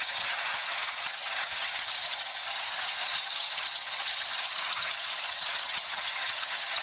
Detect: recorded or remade remade